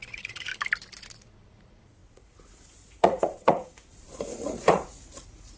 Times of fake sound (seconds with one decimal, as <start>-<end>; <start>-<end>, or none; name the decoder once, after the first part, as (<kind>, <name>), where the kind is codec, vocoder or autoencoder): 0.0-0.5 (vocoder, Vocos); 1.2-5.6